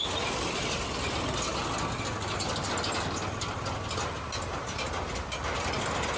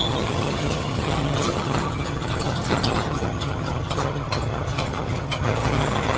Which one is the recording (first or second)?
first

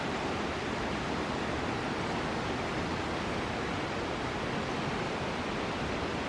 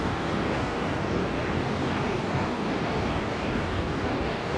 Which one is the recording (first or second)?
first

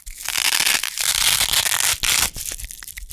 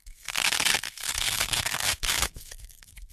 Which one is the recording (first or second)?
first